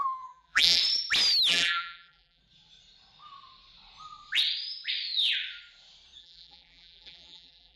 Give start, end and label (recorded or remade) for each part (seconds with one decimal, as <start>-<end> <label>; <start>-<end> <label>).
0.0-0.8 remade; 0.8-1.5 recorded; 1.5-2.4 remade; 2.4-6.2 recorded; 6.2-7.8 remade